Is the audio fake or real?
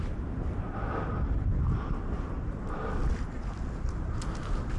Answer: real